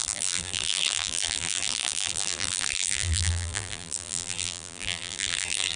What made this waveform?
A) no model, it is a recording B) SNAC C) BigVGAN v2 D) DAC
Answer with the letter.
C